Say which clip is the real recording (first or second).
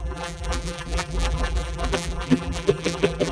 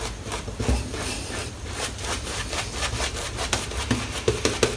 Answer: second